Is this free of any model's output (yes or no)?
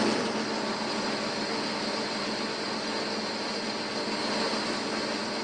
yes